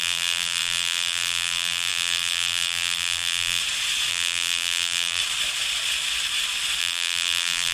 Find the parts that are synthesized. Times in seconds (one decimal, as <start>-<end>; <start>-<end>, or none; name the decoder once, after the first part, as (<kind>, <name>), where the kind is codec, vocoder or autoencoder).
0.0-3.6 (vocoder, BigVGAN v2); 4.1-5.2; 6.8-7.7